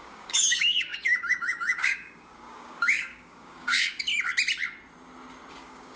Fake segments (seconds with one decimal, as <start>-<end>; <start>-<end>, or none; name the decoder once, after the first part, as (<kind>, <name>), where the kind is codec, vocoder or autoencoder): 0.0-4.1 (codec, DAC); 5.5-6.0